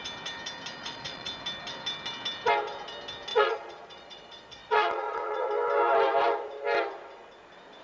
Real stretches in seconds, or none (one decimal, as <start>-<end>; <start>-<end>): 0.0-0.8; 1.3-3.3; 5.5-7.8